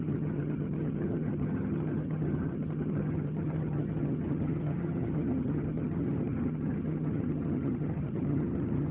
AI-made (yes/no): yes